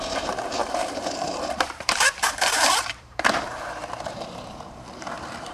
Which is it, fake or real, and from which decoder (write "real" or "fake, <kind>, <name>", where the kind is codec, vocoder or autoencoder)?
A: fake, vocoder, BigVGAN v2